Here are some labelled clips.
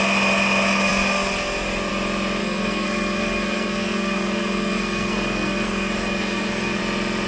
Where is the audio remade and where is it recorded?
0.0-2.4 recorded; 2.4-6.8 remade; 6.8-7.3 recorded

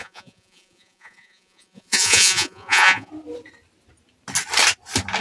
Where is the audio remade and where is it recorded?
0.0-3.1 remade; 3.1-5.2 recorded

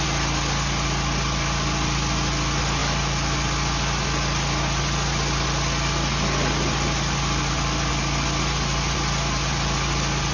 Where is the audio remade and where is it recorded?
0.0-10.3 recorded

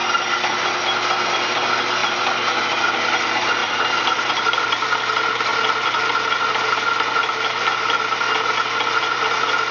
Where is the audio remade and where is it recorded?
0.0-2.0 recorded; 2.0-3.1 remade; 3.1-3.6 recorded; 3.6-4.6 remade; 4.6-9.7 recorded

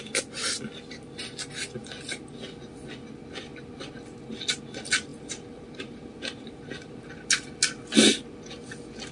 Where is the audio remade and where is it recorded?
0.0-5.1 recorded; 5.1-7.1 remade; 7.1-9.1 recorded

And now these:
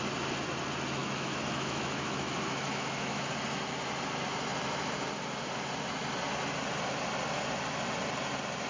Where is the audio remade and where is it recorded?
0.0-1.0 recorded; 1.0-3.3 remade; 3.3-8.7 recorded

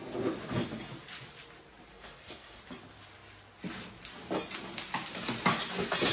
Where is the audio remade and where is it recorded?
0.0-1.9 recorded; 1.9-2.6 remade; 2.6-6.1 recorded